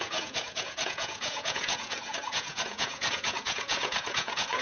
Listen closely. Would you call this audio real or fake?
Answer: fake